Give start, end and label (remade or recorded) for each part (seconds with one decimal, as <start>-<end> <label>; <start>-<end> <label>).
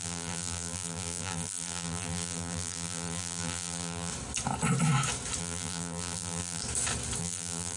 0.0-4.1 remade; 4.1-5.4 recorded; 5.4-6.6 remade; 6.6-7.2 recorded; 7.2-7.8 remade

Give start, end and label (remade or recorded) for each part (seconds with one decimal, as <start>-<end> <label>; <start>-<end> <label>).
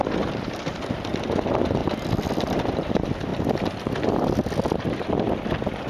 0.0-5.9 recorded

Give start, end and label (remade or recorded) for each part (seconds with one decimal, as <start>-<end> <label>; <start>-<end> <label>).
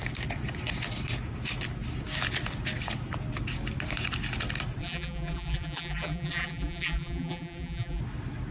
0.0-4.8 recorded; 4.8-8.0 remade; 8.0-8.5 recorded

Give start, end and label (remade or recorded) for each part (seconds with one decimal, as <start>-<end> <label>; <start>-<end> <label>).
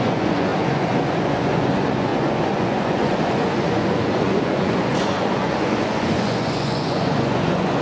0.0-7.8 remade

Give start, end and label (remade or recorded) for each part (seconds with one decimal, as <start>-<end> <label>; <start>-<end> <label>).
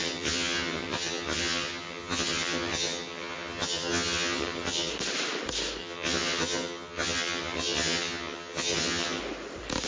0.0-4.9 remade; 4.9-5.8 recorded; 5.8-9.2 remade; 9.2-9.9 recorded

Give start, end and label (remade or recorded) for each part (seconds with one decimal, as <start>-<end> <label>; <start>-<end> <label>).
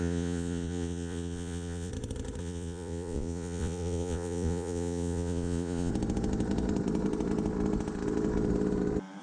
0.0-1.9 remade; 1.9-2.4 recorded; 2.4-5.9 remade; 5.9-9.2 recorded